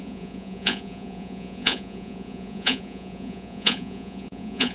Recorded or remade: remade